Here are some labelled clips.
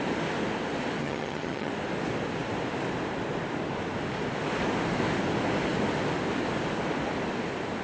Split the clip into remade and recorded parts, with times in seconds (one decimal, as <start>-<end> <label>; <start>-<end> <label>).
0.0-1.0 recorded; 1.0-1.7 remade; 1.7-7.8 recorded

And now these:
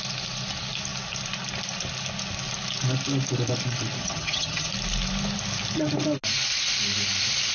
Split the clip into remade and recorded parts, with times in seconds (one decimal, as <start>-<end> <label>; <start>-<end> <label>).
0.0-4.0 recorded; 4.0-4.7 remade; 4.7-7.5 recorded

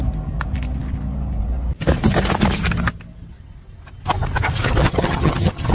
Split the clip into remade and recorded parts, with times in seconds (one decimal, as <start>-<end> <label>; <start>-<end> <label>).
0.0-4.8 recorded; 4.8-5.7 remade

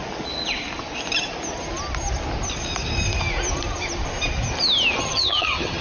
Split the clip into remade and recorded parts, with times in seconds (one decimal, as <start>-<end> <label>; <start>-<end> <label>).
0.0-5.0 recorded; 5.0-5.8 remade